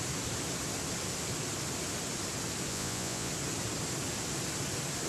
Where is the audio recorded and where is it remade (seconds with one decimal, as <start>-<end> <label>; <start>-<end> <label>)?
0.0-2.7 recorded; 2.7-3.3 remade; 3.3-5.1 recorded